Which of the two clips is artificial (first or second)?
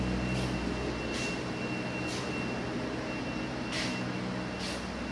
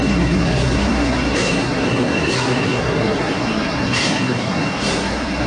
second